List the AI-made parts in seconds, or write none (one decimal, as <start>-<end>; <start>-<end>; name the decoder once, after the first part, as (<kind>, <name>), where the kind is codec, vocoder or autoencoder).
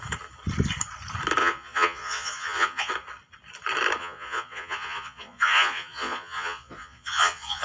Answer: 1.4-2.9 (vocoder, Vocos); 4.0-7.6